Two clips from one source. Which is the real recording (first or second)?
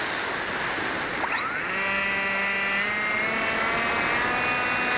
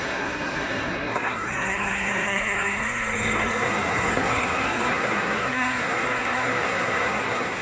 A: first